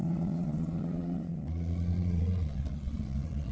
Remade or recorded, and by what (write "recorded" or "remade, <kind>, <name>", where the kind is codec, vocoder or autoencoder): remade, vocoder, Vocos